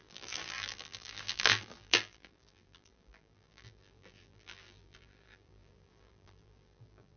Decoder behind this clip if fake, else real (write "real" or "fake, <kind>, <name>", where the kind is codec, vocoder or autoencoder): fake, vocoder, BigVGAN v2